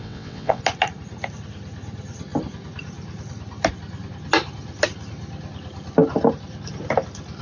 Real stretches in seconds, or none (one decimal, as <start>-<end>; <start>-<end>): 0.6-7.4